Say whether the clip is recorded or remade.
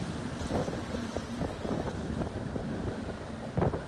recorded